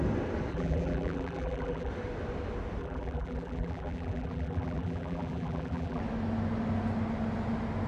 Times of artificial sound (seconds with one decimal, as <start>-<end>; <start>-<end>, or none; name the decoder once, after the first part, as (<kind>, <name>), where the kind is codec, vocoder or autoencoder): 0.5-1.9 (vocoder, BigVGAN v2); 2.8-6.0